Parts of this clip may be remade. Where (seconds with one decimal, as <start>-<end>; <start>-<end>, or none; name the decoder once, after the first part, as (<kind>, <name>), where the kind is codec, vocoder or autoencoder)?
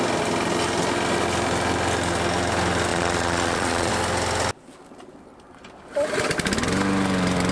2.9-3.9 (vocoder, Vocos)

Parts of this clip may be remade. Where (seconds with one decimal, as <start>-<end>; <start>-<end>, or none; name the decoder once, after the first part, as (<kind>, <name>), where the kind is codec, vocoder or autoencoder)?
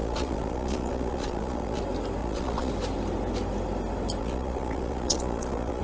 0.0-1.8 (vocoder, Vocos); 2.2-2.7; 4.2-5.8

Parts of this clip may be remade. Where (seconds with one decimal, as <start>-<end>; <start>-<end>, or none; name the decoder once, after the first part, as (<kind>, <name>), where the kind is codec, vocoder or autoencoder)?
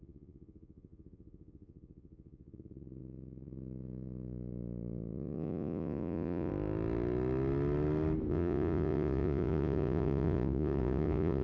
0.0-6.5 (vocoder, Vocos); 8.3-11.4